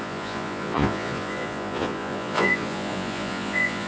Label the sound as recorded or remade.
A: remade